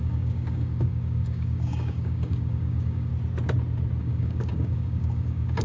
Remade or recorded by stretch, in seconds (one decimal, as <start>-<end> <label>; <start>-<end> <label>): 0.0-3.1 remade; 3.1-4.0 recorded; 4.0-5.6 remade